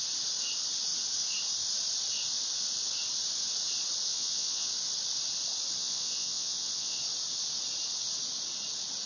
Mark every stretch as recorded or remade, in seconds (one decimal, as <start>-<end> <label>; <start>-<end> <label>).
0.0-4.1 recorded; 4.1-4.7 remade; 4.7-5.8 recorded; 5.8-7.0 remade; 7.0-9.1 recorded